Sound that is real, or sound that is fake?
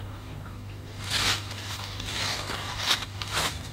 fake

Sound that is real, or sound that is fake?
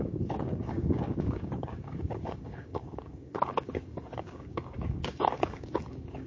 fake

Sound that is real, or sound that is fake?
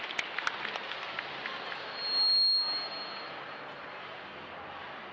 real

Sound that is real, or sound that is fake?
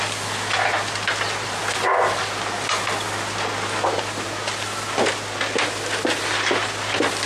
real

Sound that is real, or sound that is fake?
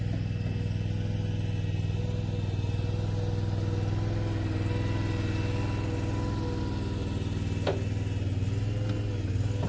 real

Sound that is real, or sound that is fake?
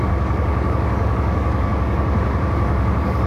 fake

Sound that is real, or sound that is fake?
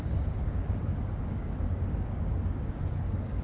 fake